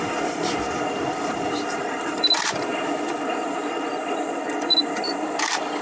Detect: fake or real fake